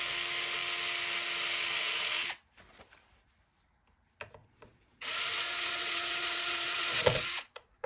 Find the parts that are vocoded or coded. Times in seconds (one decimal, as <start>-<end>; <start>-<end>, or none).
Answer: 4.4-7.9